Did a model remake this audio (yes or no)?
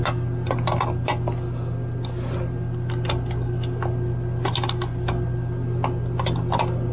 no